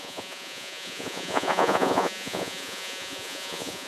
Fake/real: fake